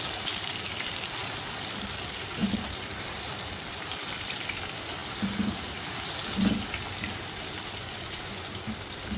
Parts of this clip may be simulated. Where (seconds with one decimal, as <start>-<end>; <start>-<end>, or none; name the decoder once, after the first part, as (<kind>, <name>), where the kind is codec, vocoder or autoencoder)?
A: 7.8-8.5 (vocoder, Vocos)